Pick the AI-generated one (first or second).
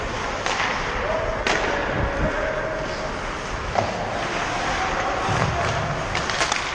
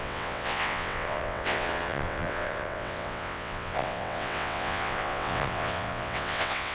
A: second